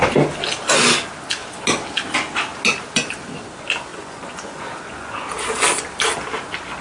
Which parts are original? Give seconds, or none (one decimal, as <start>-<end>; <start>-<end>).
0.0-3.9; 5.3-6.8